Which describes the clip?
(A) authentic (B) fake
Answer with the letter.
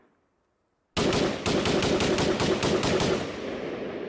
A